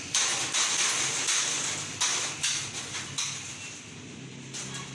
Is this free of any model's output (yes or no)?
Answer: yes